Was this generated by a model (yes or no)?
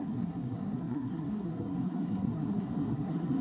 yes